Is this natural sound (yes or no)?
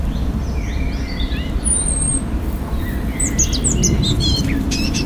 yes